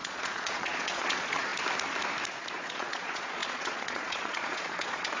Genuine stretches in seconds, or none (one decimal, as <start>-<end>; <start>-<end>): 1.5-2.5